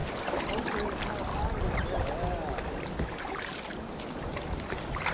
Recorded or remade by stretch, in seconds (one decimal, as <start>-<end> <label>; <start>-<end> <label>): 0.0-5.1 recorded